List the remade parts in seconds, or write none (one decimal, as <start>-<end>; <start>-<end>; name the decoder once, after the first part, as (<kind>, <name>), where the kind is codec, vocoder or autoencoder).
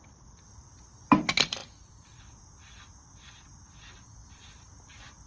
1.6-2.2 (vocoder, BigVGAN v2); 4.2-5.3